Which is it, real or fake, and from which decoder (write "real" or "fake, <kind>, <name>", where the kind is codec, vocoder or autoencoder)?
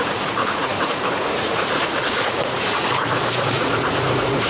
fake, vocoder, Vocos